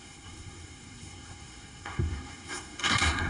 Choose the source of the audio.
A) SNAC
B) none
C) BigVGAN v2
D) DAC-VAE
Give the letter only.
A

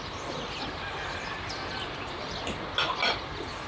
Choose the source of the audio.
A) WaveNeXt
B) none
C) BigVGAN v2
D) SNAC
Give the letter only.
B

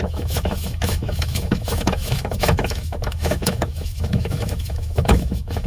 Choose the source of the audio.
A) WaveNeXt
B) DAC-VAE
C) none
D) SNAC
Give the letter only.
B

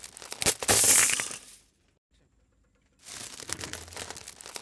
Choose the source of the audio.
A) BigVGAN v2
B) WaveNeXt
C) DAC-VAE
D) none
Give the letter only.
D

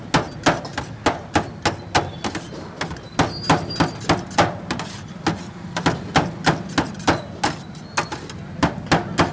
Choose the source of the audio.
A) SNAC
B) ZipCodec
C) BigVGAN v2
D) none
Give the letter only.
D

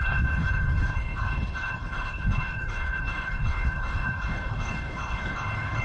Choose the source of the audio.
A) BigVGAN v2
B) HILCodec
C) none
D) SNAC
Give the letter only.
B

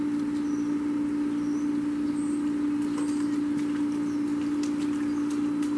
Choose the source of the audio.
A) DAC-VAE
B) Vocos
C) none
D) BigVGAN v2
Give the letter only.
C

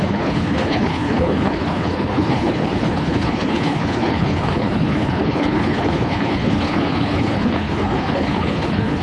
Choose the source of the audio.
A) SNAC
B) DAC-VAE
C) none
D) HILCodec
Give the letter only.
D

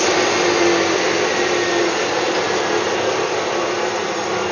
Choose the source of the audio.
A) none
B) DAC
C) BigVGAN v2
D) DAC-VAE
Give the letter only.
A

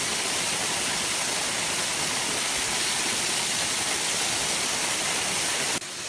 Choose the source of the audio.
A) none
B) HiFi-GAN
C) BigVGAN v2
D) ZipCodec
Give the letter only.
A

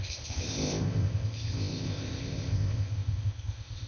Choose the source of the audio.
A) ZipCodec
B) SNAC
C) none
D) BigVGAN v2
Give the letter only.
A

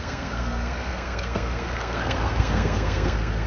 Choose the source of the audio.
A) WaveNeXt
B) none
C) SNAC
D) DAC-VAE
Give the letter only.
C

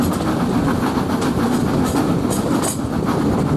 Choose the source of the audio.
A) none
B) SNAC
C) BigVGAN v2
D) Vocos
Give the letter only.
A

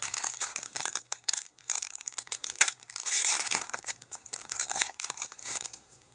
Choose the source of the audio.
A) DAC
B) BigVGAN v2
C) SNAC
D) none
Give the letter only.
C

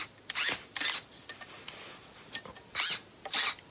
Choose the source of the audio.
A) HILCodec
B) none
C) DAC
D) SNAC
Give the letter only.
B